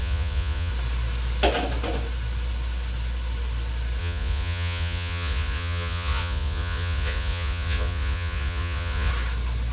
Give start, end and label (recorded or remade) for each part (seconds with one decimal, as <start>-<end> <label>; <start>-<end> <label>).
0.0-0.7 remade; 0.7-4.0 recorded; 4.0-9.1 remade; 9.1-9.7 recorded